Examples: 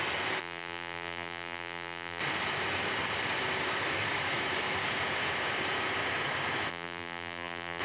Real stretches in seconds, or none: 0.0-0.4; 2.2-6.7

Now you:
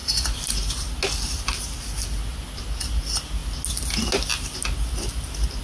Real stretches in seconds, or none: 0.0-5.6